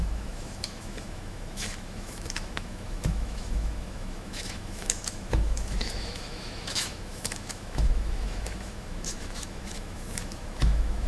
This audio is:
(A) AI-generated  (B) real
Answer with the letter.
A